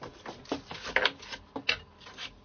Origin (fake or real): real